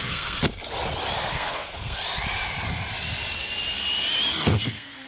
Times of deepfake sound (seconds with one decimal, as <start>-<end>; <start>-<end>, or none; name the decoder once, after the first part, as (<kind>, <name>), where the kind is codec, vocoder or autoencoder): 0.0-0.4 (codec, SNAC); 1.3-2.0; 4.3-5.1